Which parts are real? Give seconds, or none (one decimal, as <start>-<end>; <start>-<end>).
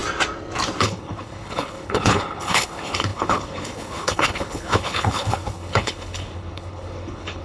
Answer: 0.0-0.8